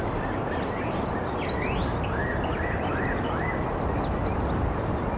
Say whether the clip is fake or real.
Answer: real